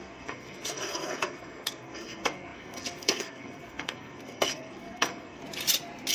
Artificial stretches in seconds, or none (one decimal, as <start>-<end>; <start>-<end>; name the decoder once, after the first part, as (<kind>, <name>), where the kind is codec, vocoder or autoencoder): 0.0-5.4 (codec, SNAC)